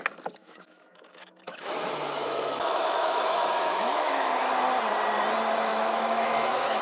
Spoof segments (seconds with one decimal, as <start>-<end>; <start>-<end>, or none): 0.4-1.7; 2.2-4.4; 5.7-6.8